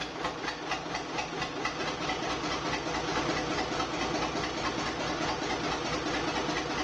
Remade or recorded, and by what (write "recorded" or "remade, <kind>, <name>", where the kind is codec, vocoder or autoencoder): recorded